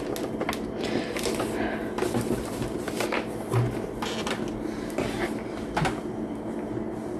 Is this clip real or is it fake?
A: real